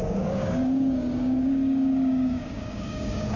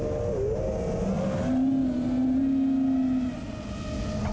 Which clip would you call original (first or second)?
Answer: second